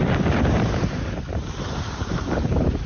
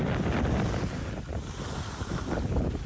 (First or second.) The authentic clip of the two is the second